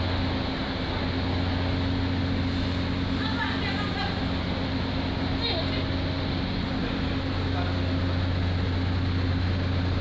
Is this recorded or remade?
recorded